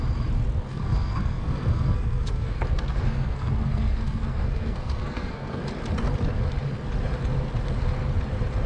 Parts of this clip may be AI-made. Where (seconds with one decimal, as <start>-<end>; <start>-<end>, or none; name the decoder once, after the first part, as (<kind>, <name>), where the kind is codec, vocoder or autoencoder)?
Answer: 0.7-5.6 (codec, SNAC)